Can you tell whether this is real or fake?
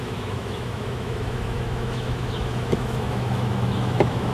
fake